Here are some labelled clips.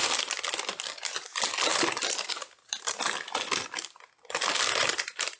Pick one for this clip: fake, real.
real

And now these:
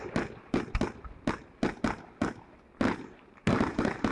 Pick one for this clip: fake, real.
real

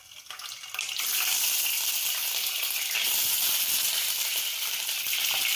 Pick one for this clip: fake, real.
real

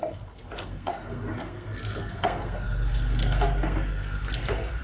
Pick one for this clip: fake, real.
fake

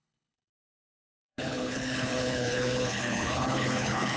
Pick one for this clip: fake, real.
fake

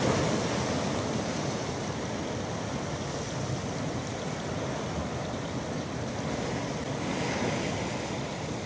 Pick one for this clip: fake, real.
real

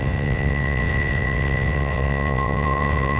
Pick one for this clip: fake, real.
fake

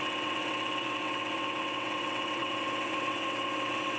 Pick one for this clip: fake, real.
fake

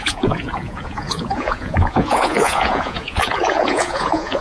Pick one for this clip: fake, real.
fake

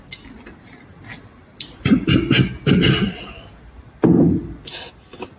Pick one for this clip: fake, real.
real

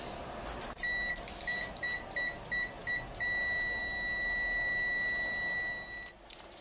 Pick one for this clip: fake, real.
real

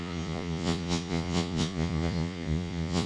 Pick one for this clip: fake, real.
fake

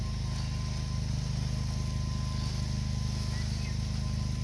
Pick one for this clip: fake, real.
real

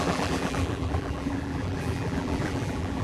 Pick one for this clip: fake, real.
fake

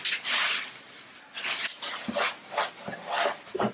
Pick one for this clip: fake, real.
real